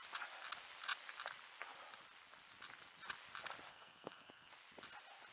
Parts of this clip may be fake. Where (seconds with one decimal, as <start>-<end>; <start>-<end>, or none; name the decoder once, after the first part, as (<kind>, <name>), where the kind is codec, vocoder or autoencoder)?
3.7-4.5 (codec, SNAC)